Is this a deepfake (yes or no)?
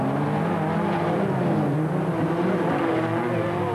no